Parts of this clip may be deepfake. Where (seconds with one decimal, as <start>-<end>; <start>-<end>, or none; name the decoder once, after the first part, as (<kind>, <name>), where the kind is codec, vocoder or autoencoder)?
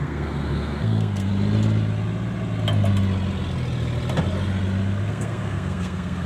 0.0-1.3 (codec, SNAC); 5.1-6.3